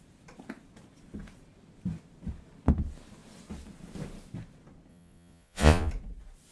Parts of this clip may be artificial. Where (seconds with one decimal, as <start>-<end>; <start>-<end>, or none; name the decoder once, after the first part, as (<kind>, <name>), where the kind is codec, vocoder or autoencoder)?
4.9-5.9 (vocoder, Vocos)